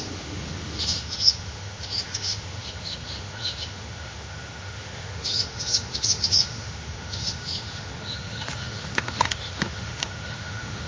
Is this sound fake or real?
fake